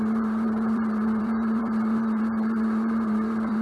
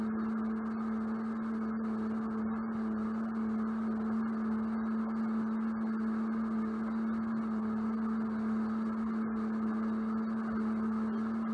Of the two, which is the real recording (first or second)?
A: second